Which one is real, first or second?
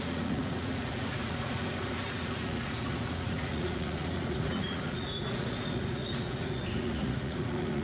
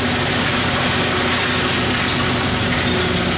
second